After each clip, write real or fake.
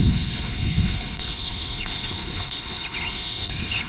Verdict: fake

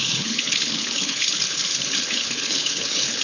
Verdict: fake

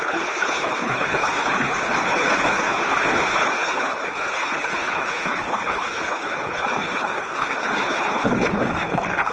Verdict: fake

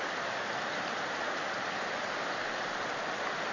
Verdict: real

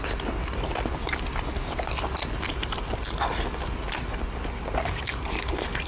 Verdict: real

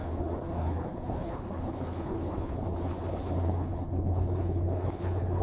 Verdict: fake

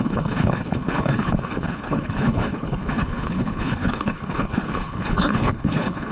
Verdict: fake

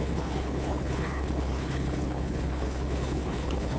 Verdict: fake